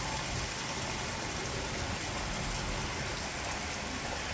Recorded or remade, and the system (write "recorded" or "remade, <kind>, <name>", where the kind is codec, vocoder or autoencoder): recorded